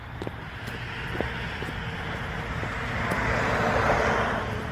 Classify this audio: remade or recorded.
recorded